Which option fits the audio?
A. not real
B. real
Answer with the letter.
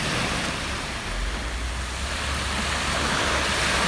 B